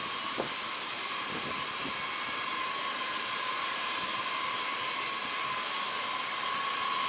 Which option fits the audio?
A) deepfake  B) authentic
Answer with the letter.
B